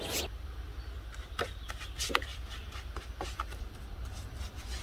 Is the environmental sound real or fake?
real